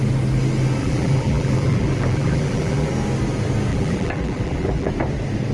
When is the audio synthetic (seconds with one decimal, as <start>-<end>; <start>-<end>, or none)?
0.8-2.9; 3.7-4.9